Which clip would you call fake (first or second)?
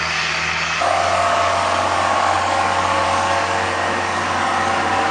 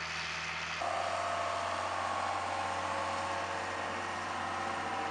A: first